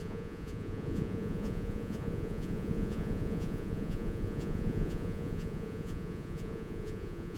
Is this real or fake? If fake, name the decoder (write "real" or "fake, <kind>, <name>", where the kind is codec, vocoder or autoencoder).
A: fake, vocoder, Vocos